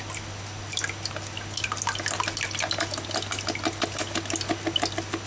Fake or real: real